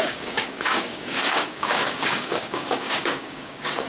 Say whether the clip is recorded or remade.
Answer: remade